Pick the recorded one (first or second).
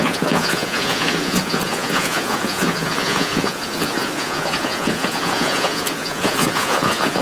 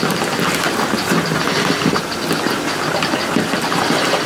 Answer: second